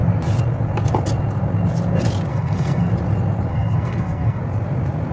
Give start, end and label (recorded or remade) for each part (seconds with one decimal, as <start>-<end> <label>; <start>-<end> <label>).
0.0-2.3 recorded; 2.3-2.9 remade; 2.9-3.5 recorded; 3.5-4.4 remade; 4.4-5.1 recorded